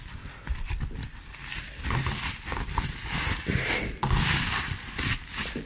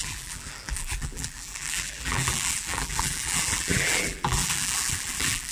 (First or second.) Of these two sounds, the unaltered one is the first